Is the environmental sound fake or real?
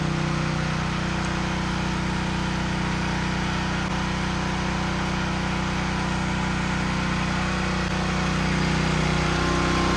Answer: real